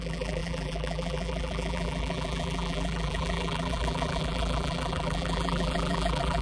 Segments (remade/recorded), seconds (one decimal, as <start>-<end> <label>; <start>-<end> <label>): 0.0-6.4 remade